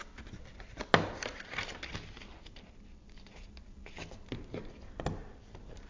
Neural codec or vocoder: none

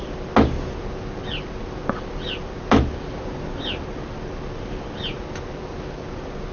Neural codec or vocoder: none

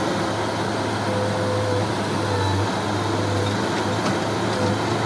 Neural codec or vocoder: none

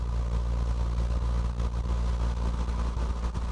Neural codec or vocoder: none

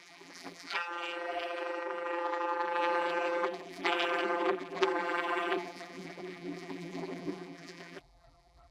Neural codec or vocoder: vocoder, BigVGAN v2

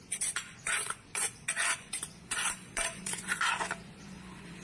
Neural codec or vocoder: vocoder, Vocos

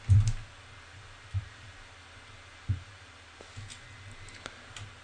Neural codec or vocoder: none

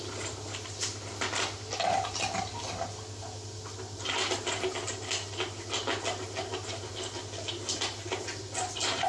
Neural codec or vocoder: none